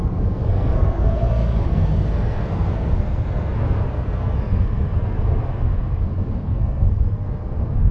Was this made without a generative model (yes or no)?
no